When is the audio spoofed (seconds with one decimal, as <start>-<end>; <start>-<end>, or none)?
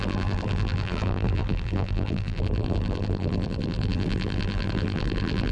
0.0-5.5